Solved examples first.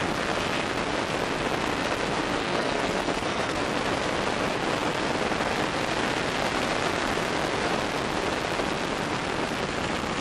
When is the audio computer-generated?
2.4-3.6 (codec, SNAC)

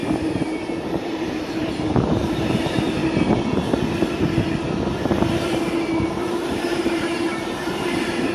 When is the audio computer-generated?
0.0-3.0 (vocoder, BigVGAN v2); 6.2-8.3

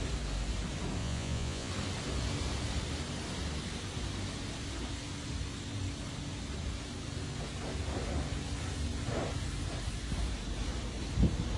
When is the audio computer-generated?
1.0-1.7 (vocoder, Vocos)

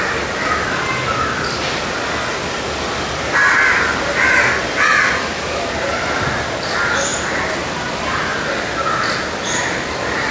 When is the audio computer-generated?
none